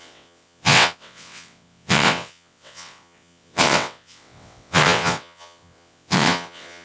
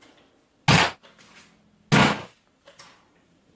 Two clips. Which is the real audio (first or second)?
second